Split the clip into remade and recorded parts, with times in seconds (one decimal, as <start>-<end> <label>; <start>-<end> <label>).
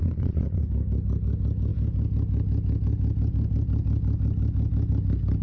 0.0-0.6 remade; 0.6-5.4 recorded